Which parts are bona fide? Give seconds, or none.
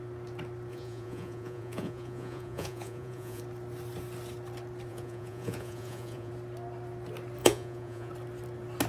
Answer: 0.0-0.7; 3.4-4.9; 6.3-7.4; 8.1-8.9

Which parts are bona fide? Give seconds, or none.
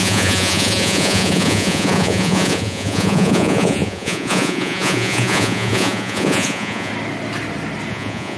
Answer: 6.9-7.9